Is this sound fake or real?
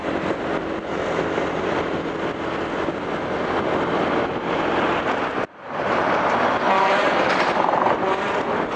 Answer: real